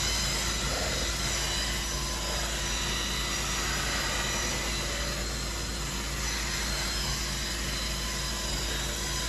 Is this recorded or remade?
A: recorded